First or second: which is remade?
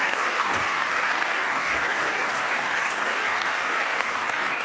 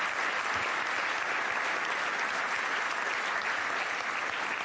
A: first